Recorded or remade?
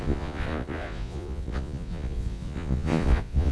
remade